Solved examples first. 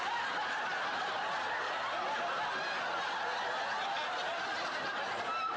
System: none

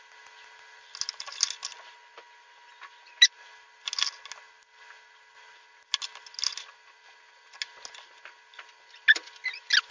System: none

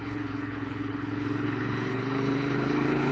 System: codec, HILCodec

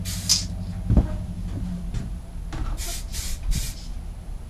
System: none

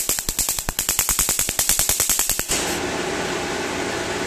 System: none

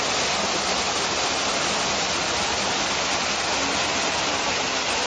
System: none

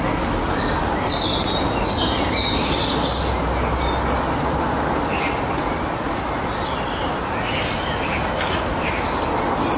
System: none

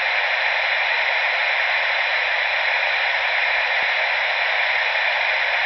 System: vocoder, BigVGAN v2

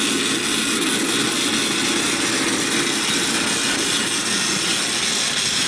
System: none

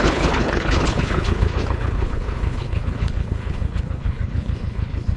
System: codec, HILCodec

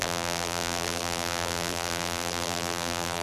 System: vocoder, BigVGAN v2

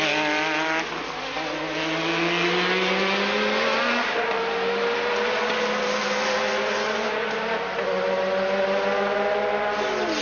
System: none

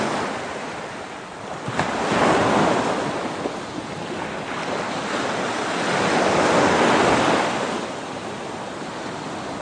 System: none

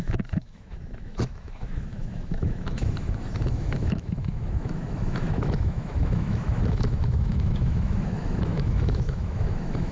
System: autoencoder, DAC-VAE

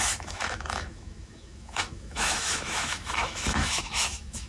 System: autoencoder, DAC-VAE